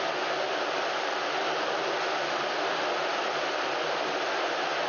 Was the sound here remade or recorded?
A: remade